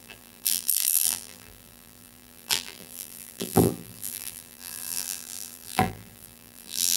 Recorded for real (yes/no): no